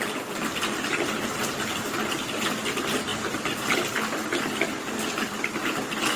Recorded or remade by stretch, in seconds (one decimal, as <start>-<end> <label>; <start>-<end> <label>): 0.0-6.2 recorded

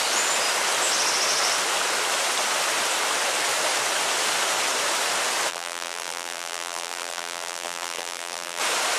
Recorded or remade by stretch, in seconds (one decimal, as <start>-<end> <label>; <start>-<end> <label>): 0.0-5.5 recorded; 5.5-8.6 remade; 8.6-9.0 recorded

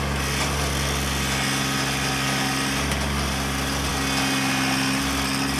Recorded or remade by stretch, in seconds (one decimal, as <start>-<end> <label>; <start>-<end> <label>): 0.0-5.6 recorded